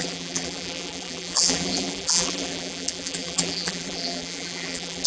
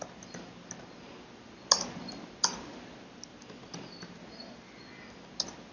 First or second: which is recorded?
second